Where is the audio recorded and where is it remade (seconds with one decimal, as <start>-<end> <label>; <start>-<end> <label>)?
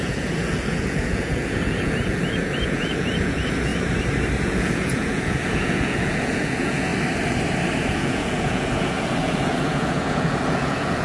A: 0.0-3.7 remade; 3.7-4.4 recorded; 4.4-6.9 remade; 6.9-7.8 recorded; 7.8-11.0 remade